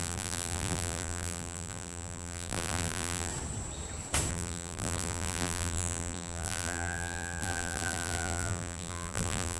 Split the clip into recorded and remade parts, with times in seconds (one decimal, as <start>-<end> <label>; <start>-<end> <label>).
0.0-3.3 remade; 3.3-4.3 recorded; 4.3-9.6 remade